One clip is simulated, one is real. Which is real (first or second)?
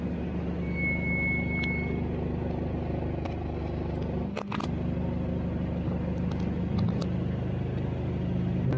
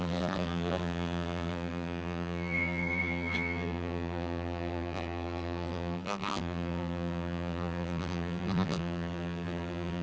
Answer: first